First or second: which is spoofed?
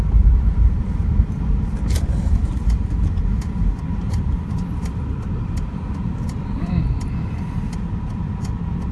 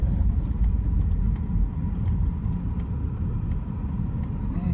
first